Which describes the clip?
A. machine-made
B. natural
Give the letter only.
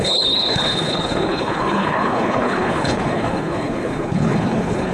A